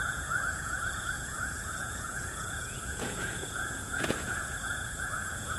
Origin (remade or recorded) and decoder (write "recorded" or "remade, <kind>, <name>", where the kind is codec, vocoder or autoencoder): remade, vocoder, Vocos